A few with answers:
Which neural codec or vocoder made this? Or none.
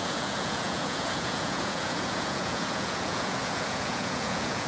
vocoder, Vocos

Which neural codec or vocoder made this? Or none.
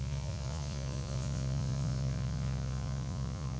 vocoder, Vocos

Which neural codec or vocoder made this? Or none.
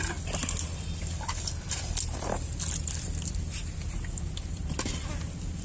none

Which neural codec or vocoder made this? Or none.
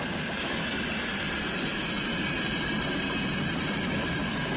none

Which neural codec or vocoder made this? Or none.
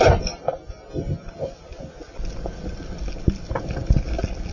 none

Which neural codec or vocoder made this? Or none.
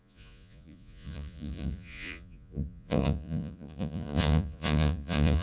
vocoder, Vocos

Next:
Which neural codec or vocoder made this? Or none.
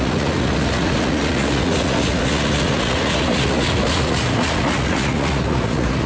vocoder, Vocos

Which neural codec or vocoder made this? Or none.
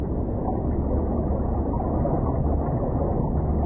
none